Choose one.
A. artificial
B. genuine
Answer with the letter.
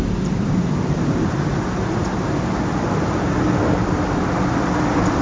B